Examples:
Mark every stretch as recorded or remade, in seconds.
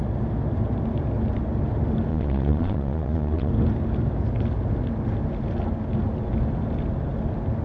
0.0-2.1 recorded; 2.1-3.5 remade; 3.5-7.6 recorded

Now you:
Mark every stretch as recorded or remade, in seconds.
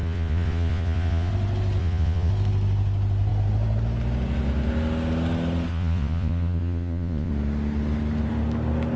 0.0-1.3 remade; 1.3-1.8 recorded; 1.8-2.3 remade; 2.3-5.7 recorded; 5.7-7.3 remade; 7.3-9.0 recorded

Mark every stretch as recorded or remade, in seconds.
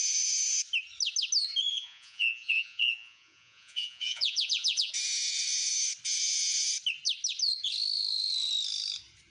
0.0-1.7 recorded; 1.7-4.9 remade; 4.9-9.3 recorded